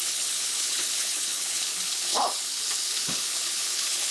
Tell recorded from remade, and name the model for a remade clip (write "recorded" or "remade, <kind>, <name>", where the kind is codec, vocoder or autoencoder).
remade, codec, HILCodec